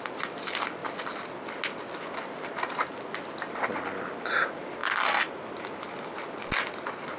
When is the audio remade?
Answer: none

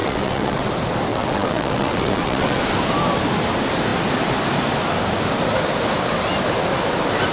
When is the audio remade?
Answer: 0.0-0.7 (vocoder, WaveNeXt); 1.1-2.6

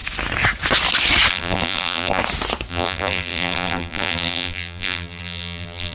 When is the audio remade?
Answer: 1.3-2.2 (vocoder, BigVGAN v2); 2.7-5.9

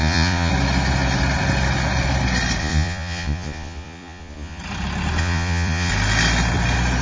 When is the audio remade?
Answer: 0.0-0.5 (vocoder, Vocos); 2.6-4.6; 5.2-5.9

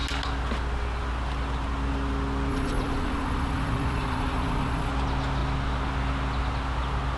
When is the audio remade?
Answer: 2.5-4.9 (vocoder, Vocos)